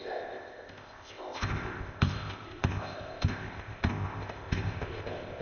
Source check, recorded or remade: remade